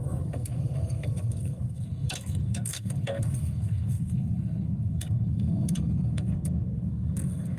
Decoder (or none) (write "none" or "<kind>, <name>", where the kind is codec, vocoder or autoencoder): codec, SNAC